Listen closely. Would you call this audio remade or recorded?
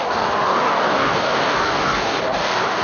remade